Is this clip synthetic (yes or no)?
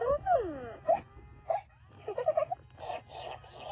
no